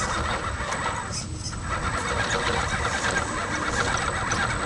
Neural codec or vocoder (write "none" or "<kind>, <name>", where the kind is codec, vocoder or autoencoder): none